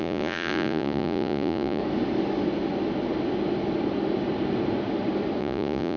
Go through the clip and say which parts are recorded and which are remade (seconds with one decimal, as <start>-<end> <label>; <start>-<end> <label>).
0.0-1.8 remade; 1.8-5.4 recorded; 5.4-6.0 remade

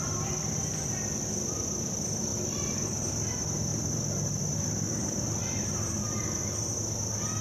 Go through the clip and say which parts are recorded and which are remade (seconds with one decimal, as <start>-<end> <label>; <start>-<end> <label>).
0.0-2.3 recorded; 2.3-3.1 remade; 3.1-3.7 recorded; 3.7-6.4 remade; 6.4-7.4 recorded

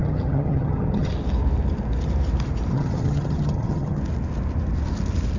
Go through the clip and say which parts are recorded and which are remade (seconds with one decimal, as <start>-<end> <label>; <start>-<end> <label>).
0.0-1.1 remade; 1.1-2.7 recorded; 2.7-4.0 remade; 4.0-5.4 recorded

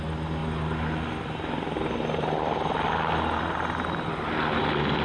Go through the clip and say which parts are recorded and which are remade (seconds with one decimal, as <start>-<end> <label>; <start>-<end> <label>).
0.0-5.0 recorded

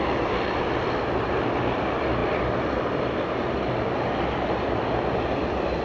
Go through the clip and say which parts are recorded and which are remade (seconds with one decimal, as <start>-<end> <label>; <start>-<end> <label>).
0.0-2.2 recorded; 2.2-5.8 remade

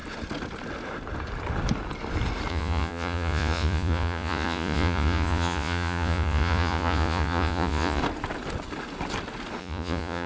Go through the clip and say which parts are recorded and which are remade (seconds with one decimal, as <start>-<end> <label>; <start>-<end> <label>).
0.0-2.5 recorded; 2.5-8.0 remade; 8.0-9.6 recorded; 9.6-10.3 remade

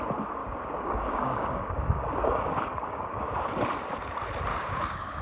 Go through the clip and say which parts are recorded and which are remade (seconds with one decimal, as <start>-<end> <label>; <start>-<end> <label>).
0.0-0.4 recorded; 0.4-3.5 remade; 3.5-4.5 recorded; 4.5-5.2 remade